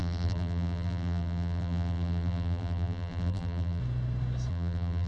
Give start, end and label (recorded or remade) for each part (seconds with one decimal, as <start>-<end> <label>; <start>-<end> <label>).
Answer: 0.0-3.8 remade; 3.8-4.5 recorded; 4.5-5.1 remade